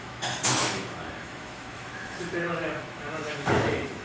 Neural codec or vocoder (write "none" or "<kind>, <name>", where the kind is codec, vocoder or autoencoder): autoencoder, DAC-VAE